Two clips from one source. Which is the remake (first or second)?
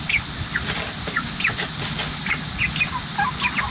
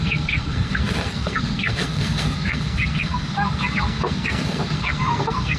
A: second